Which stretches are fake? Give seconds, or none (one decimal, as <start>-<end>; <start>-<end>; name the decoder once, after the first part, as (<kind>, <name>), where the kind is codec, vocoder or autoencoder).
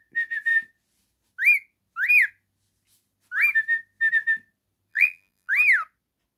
4.9-5.5 (vocoder, BigVGAN v2)